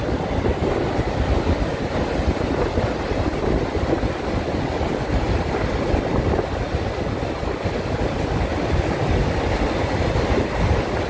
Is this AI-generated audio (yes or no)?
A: no